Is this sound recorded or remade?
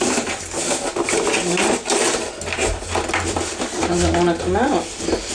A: recorded